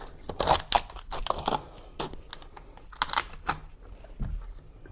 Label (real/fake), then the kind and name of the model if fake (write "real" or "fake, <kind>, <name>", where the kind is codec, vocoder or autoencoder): real